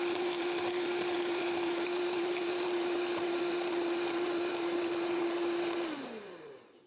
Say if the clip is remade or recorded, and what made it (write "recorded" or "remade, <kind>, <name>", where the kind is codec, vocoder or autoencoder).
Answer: remade, vocoder, BigVGAN v2